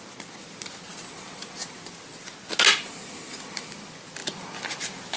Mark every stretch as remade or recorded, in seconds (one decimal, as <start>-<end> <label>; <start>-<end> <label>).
0.0-5.2 recorded